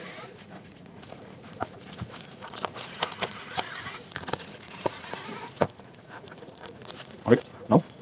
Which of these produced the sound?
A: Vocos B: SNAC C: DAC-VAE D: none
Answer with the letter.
A